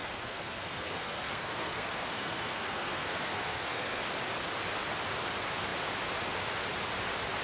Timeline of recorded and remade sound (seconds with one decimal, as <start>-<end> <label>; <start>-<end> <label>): 0.0-4.0 remade; 4.0-7.4 recorded